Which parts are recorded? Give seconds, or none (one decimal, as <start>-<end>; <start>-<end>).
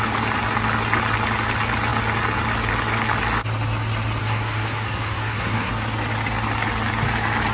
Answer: 0.0-4.2; 5.7-7.5